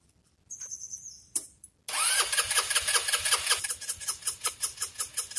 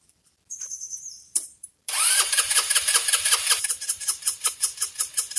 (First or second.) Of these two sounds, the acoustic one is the first